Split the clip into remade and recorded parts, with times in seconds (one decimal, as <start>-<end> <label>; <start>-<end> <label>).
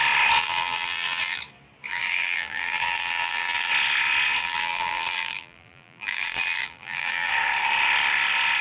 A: 0.0-0.4 recorded; 0.4-1.4 remade; 1.4-1.9 recorded; 1.9-3.7 remade; 3.7-4.4 recorded; 4.4-7.3 remade; 7.3-8.6 recorded